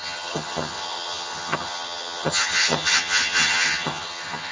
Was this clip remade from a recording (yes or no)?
yes